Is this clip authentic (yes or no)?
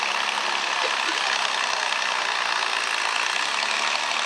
yes